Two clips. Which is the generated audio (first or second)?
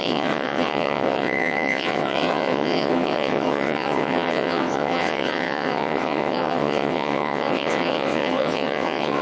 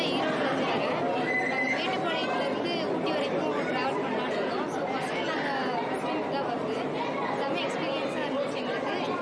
first